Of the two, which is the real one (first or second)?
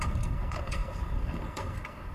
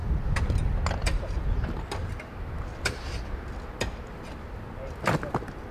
second